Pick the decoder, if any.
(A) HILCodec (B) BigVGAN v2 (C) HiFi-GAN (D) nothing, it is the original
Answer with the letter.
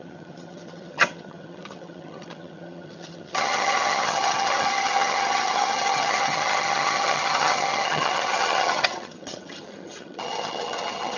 C